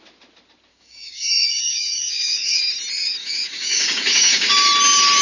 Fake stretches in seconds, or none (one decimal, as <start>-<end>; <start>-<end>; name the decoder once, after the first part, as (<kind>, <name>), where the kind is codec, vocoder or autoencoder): 0.7-2.6 (codec, DAC); 3.2-4.5